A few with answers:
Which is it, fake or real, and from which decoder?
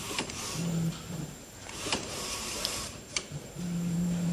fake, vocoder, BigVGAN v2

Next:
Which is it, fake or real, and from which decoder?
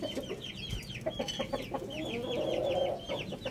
real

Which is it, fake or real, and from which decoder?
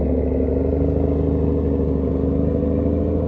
real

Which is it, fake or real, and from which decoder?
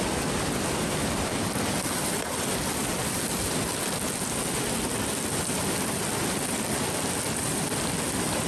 real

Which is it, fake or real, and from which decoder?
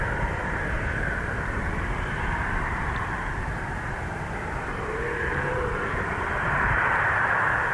fake, vocoder, BigVGAN v2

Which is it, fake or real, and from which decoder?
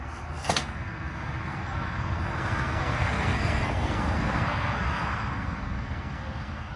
fake, codec, SNAC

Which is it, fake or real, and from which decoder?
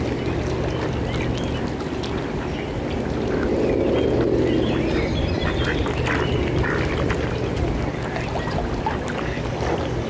real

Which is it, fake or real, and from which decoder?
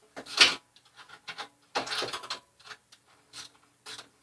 real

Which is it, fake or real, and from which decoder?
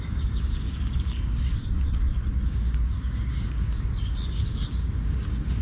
fake, codec, DAC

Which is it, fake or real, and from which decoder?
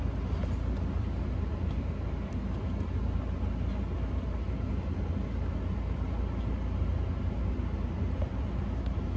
real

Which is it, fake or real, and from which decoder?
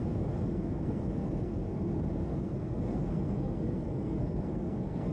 fake, codec, SNAC